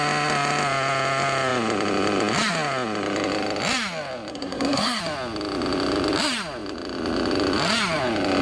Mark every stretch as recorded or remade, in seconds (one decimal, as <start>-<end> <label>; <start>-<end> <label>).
0.0-4.3 recorded; 4.3-5.0 remade; 5.0-8.4 recorded